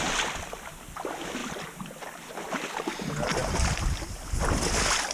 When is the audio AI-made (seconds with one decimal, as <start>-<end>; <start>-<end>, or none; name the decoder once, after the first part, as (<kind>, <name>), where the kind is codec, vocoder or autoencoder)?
none